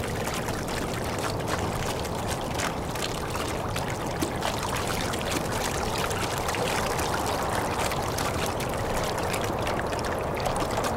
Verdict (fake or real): real